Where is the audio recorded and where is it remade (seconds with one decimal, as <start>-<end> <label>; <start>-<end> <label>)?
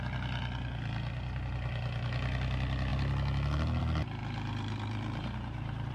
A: 0.0-4.2 recorded; 4.2-5.9 remade